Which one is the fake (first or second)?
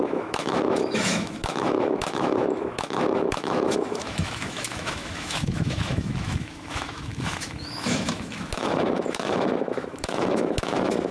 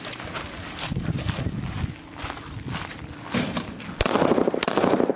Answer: first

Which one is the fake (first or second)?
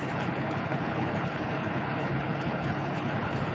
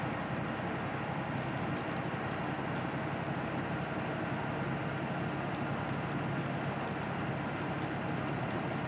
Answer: first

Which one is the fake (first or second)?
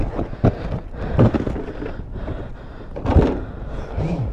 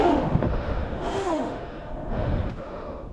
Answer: second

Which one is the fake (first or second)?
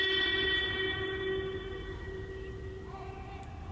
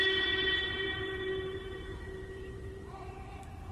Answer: second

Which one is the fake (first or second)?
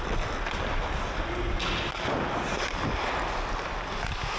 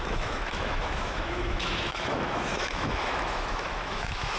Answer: second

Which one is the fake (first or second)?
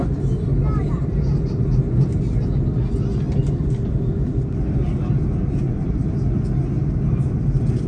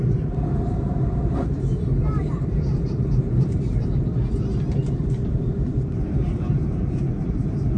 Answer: second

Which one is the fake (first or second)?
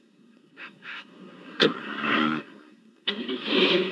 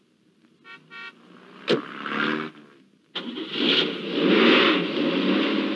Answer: first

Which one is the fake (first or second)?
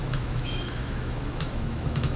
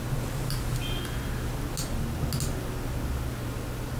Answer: first